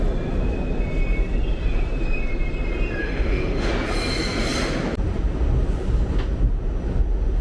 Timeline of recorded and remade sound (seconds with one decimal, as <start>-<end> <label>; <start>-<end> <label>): 0.0-3.0 recorded; 3.0-3.7 remade; 3.7-7.4 recorded